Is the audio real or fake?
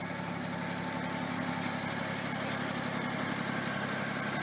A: real